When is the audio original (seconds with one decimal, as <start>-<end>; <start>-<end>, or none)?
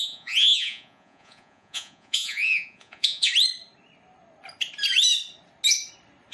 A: 3.3-6.3